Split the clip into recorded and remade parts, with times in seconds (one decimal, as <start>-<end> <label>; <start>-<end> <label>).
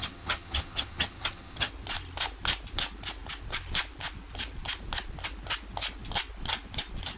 0.0-1.7 remade; 1.7-7.2 recorded